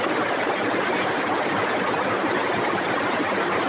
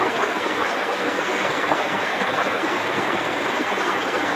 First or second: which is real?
first